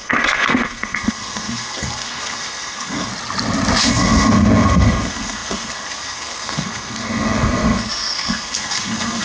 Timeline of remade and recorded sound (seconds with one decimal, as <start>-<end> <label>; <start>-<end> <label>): 0.0-3.1 remade; 3.1-3.8 recorded; 3.8-9.2 remade